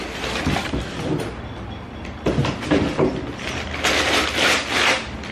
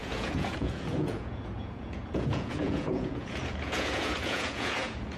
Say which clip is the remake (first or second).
second